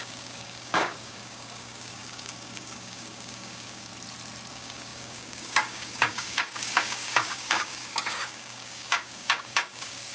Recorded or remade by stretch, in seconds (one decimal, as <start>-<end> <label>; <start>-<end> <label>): 0.0-3.9 remade; 3.9-4.5 recorded; 4.5-10.1 remade

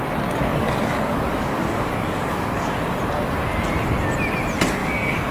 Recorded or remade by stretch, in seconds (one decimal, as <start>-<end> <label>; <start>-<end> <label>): 0.0-0.5 recorded; 0.5-3.0 remade; 3.0-4.8 recorded; 4.8-5.3 remade

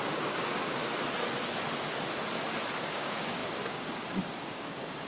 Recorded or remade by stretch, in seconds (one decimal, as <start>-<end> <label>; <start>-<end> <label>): 0.0-0.8 remade; 0.8-2.9 recorded; 2.9-5.1 remade

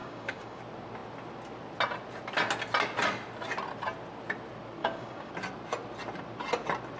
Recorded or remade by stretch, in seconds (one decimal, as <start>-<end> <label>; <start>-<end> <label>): 0.0-0.6 remade; 0.6-4.8 recorded; 4.8-5.3 remade; 5.3-7.0 recorded